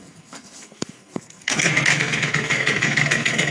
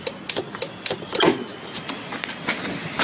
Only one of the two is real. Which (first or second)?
second